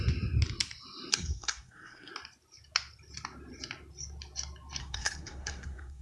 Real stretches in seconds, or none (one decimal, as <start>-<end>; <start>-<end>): 0.0-1.1; 2.1-4.8